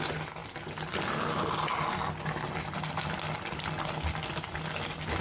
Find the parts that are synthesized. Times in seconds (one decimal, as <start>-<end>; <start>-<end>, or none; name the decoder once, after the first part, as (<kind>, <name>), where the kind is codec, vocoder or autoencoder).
none